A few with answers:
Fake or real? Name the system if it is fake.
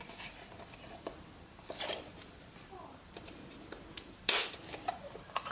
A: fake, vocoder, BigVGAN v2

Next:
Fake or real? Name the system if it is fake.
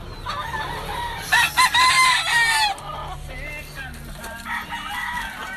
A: real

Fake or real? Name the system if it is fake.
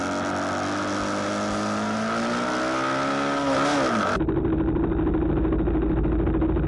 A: real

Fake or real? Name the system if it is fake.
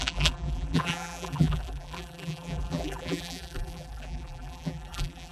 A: fake, vocoder, BigVGAN v2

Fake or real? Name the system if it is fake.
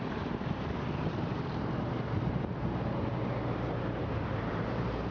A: fake, vocoder, BigVGAN v2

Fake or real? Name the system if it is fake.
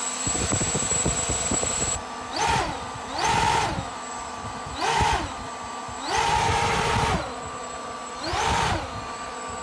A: fake, vocoder, BigVGAN v2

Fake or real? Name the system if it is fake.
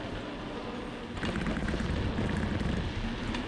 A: real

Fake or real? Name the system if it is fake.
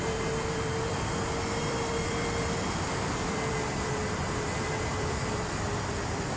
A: fake, vocoder, BigVGAN v2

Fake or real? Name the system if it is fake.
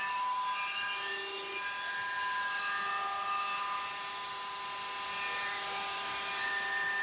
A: real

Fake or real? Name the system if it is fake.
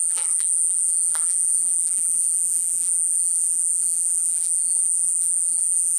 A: fake, vocoder, BigVGAN v2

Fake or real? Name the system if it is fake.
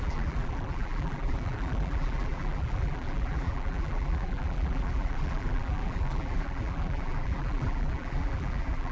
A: fake, vocoder, BigVGAN v2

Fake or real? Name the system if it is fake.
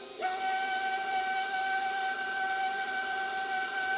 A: fake, vocoder, BigVGAN v2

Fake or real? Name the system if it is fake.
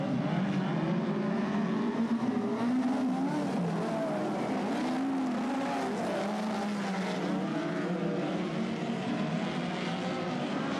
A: real